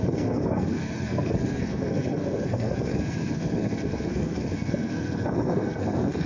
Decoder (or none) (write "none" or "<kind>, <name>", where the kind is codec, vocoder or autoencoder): codec, SNAC